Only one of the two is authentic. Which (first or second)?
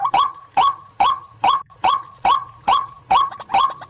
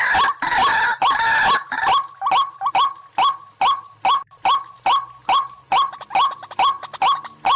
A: second